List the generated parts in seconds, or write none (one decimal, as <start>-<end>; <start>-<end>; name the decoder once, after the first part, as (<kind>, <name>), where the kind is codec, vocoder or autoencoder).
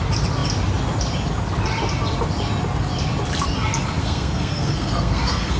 4.0-5.6 (codec, SNAC)